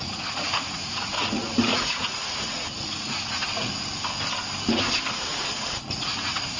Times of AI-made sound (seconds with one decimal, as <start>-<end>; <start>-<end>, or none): 0.0-3.5; 5.1-6.6